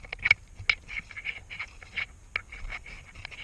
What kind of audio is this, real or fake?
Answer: real